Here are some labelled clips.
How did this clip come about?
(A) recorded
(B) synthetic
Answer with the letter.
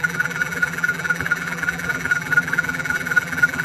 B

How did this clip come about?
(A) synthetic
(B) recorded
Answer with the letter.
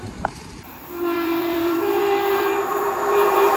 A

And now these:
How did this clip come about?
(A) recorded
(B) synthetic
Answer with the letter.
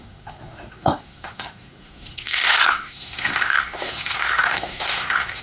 B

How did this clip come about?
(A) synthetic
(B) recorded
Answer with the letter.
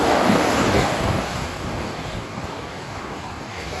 A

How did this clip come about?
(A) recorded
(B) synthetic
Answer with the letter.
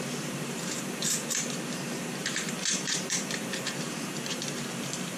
B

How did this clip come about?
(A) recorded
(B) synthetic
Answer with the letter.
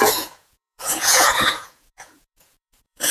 B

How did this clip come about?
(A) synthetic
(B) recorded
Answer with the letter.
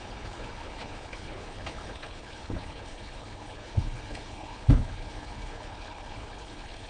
A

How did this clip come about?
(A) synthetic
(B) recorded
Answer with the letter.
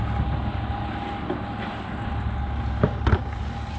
B